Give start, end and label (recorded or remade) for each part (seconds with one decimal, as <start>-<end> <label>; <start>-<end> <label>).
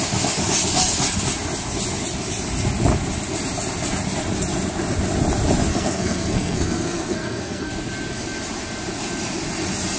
0.0-5.7 recorded; 5.7-7.7 remade; 7.7-10.0 recorded